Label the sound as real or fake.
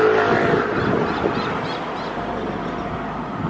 real